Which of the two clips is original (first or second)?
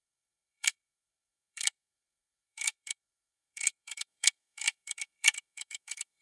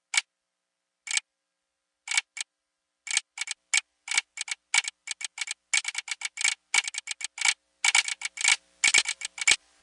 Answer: second